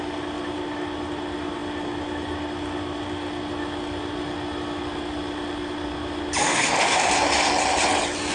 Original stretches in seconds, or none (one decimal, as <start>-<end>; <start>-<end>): 0.0-6.4; 7.1-8.3